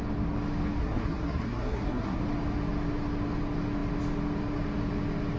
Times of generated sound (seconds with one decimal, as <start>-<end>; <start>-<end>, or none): 0.8-2.2